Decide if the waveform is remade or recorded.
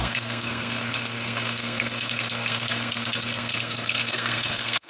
remade